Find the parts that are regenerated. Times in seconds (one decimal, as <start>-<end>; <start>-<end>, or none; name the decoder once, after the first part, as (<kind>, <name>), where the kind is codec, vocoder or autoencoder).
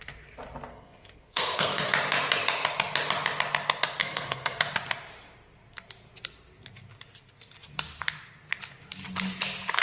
0.7-1.9 (codec, SNAC); 4.0-4.6